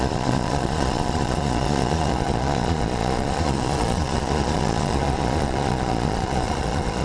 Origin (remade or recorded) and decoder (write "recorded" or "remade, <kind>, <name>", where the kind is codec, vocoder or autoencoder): remade, vocoder, Vocos